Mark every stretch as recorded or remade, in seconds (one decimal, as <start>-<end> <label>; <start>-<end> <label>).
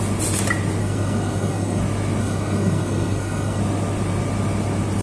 0.0-0.8 recorded; 0.8-1.8 remade; 1.8-2.2 recorded; 2.2-3.6 remade; 3.6-5.0 recorded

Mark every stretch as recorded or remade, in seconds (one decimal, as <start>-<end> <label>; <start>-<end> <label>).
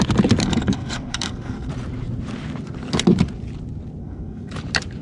0.0-0.4 recorded; 0.4-1.7 remade; 1.7-4.0 recorded; 4.0-4.5 remade; 4.5-5.0 recorded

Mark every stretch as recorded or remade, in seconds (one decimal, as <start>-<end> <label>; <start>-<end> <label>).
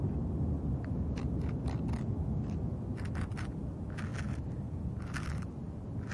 0.0-6.1 recorded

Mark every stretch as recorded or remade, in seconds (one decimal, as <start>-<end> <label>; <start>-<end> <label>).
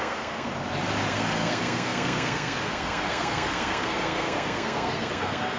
0.0-0.5 remade; 0.5-1.1 recorded; 1.1-5.6 remade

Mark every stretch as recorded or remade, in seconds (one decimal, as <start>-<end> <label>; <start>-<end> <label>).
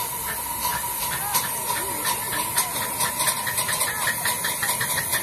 0.0-5.2 recorded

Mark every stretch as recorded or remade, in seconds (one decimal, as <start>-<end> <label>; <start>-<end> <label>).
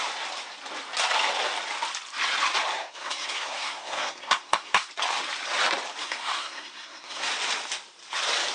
0.0-2.7 recorded; 2.7-4.9 remade; 4.9-6.0 recorded; 6.0-7.3 remade; 7.3-8.5 recorded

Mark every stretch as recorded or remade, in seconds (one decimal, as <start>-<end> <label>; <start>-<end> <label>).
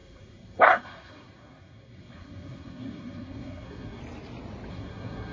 0.0-4.0 remade; 4.0-4.7 recorded; 4.7-5.3 remade